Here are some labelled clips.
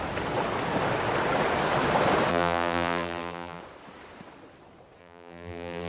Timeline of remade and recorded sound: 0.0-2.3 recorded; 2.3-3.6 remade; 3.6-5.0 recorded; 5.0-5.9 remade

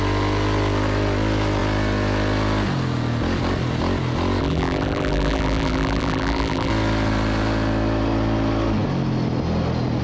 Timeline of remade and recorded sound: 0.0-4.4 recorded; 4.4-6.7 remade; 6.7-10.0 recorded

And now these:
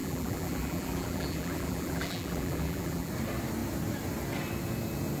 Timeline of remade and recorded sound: 0.0-3.1 remade; 3.1-5.2 recorded

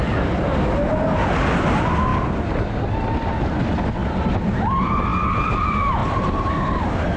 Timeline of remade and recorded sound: 0.0-4.0 recorded; 4.0-4.6 remade; 4.6-6.0 recorded; 6.0-6.5 remade; 6.5-7.2 recorded

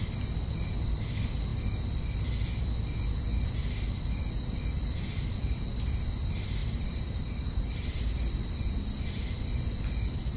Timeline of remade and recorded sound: 0.0-6.6 recorded; 6.6-8.4 remade; 8.4-10.4 recorded

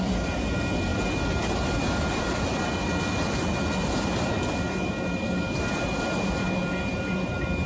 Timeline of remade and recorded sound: 0.0-0.9 remade; 0.9-2.2 recorded; 2.2-7.7 remade

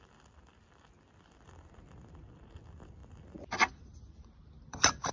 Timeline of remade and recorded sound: 0.0-3.0 recorded; 3.0-5.1 remade